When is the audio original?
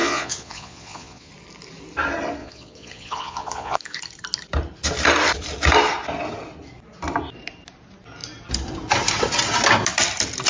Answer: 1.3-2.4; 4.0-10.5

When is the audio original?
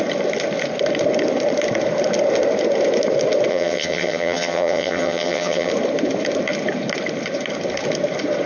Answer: 0.0-3.5; 5.7-8.5